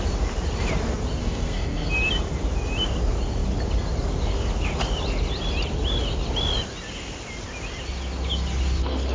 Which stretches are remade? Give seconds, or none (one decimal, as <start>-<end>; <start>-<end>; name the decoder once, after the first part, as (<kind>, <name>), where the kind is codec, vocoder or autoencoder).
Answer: 1.2-1.9 (codec, SNAC)